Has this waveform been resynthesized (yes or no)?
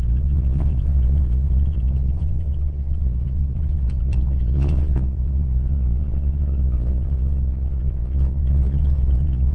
yes